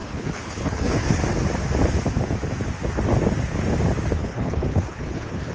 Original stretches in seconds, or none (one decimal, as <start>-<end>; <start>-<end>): 1.2-4.1